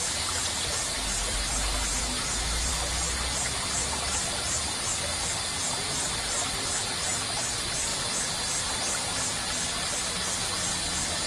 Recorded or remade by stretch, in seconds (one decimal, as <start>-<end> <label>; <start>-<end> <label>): 0.0-1.9 recorded; 1.9-2.7 remade; 2.7-11.3 recorded